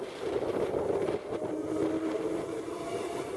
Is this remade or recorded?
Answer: recorded